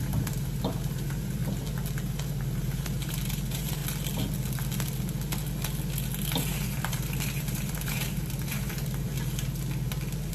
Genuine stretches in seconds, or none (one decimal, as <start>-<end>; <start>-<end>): 1.4-2.0; 3.8-6.4; 9.1-10.3